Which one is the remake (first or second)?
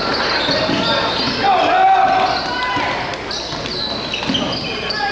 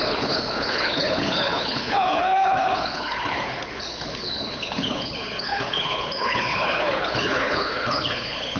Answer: second